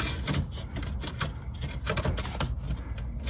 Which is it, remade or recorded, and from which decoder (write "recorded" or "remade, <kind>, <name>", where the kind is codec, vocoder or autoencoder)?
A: recorded